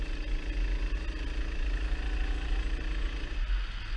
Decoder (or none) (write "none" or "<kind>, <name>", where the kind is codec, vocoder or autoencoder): none